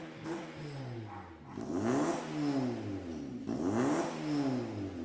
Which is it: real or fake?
real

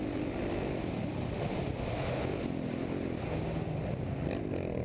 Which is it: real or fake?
real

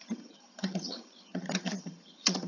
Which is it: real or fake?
fake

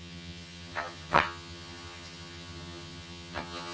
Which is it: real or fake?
fake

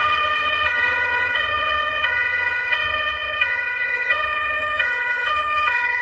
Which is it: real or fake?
fake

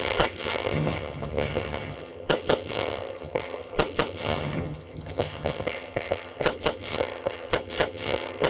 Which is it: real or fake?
fake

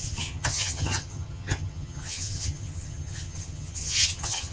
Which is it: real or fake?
fake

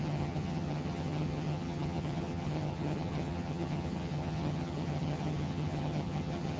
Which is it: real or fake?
fake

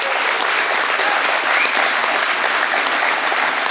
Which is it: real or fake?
real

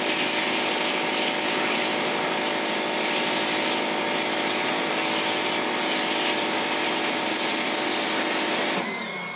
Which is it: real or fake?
real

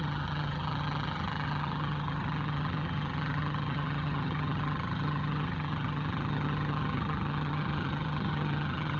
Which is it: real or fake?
fake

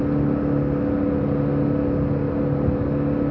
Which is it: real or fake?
real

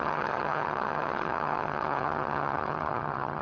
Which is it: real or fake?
fake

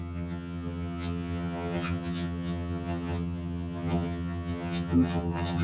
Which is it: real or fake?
fake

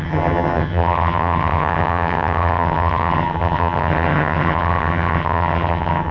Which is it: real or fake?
fake